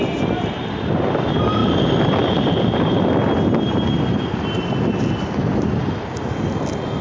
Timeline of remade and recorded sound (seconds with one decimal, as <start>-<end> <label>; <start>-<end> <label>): 0.0-1.6 recorded; 1.6-3.1 remade; 3.1-7.0 recorded